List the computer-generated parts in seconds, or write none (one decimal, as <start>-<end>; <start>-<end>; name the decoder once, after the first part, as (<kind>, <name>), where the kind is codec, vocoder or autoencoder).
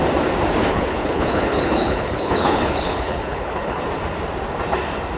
0.7-3.8 (codec, HILCodec)